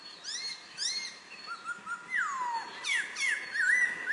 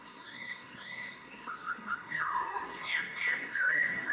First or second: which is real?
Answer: first